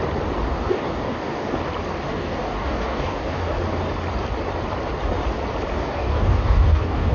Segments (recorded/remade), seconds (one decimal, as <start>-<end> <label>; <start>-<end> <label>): 0.0-0.5 recorded; 0.5-1.5 remade; 1.5-2.1 recorded; 2.1-3.5 remade; 3.5-5.7 recorded; 5.7-7.1 remade